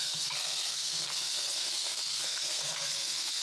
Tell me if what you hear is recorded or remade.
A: remade